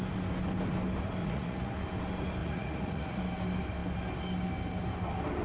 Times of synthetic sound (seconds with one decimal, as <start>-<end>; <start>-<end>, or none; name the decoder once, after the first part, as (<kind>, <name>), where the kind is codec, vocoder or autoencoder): 1.2-1.7 (vocoder, Vocos); 2.4-3.2